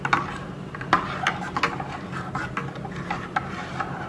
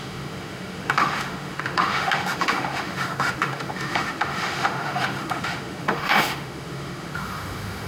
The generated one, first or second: second